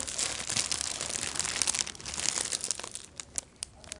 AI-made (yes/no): no